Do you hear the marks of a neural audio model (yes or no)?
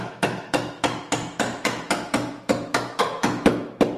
yes